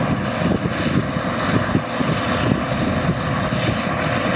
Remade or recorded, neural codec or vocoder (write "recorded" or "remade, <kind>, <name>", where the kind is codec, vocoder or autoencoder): recorded